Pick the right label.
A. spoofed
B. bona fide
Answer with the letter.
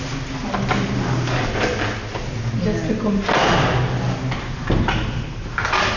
B